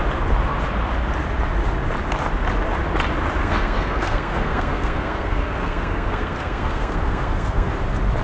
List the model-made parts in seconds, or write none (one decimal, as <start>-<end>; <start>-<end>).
3.4-7.7